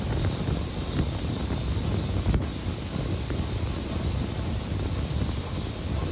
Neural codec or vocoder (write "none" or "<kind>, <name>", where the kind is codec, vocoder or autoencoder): none